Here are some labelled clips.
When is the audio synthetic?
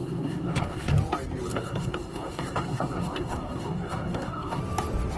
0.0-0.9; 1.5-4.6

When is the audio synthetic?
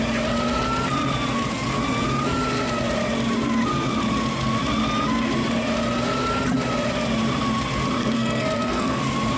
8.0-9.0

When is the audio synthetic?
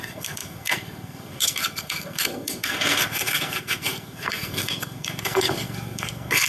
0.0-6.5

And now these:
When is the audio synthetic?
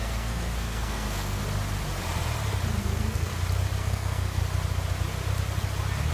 0.0-1.4; 2.8-3.3; 3.8-4.4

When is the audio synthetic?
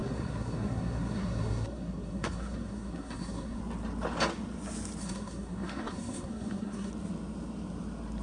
0.0-3.6; 5.0-6.9